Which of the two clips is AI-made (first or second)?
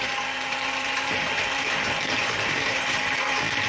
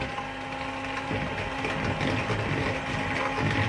first